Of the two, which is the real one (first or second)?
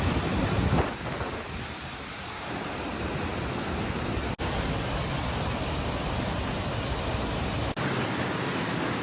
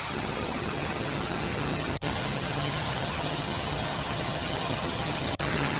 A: first